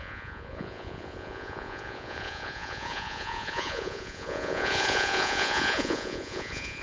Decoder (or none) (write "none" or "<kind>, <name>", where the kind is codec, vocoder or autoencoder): vocoder, Vocos